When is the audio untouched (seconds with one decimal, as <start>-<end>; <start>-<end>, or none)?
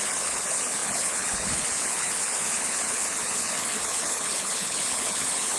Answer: none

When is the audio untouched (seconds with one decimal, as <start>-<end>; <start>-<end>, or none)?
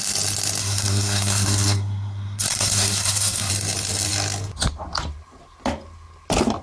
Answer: 0.0-0.6; 3.5-6.6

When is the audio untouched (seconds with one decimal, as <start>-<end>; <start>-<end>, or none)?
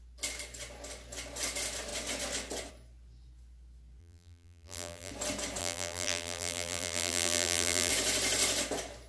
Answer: 0.0-4.0; 5.1-5.6; 7.9-9.1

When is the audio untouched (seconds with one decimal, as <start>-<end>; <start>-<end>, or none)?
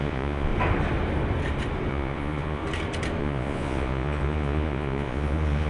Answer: 0.5-1.9; 2.6-3.2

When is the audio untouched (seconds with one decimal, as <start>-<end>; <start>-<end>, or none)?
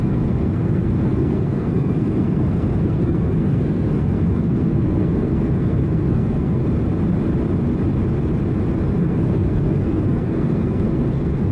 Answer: 6.6-9.0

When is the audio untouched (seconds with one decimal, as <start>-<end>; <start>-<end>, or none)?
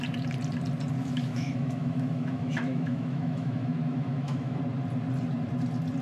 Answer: 0.0-1.0; 4.6-6.0